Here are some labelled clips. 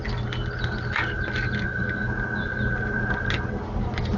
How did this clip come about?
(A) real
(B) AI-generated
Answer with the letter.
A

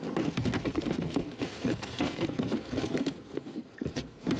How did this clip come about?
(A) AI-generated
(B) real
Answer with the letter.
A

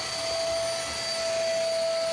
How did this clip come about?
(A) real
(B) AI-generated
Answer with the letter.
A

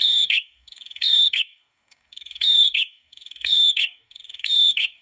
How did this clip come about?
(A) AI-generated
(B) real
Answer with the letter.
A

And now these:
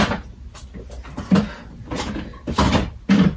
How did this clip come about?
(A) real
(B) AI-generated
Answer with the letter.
A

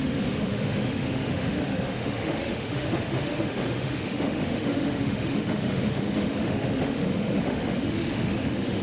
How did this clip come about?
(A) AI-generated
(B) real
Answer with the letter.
A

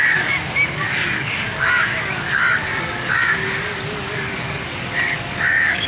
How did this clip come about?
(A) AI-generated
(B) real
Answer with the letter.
A